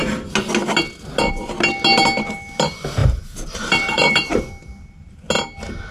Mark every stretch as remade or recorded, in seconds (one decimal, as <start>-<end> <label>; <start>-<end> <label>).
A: 0.0-3.0 recorded; 3.0-4.4 remade; 4.4-5.9 recorded